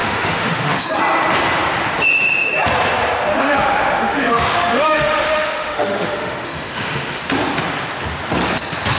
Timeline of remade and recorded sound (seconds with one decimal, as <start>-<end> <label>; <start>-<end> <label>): 0.0-0.9 remade; 0.9-3.3 recorded; 3.3-7.2 remade; 7.2-9.0 recorded